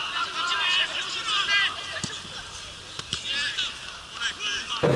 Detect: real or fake real